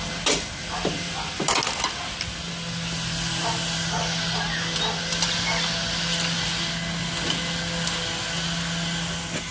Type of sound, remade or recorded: recorded